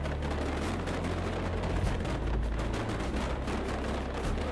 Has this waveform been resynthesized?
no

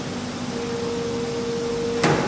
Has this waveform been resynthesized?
no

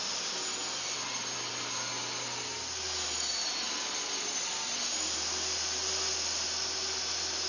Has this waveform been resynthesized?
no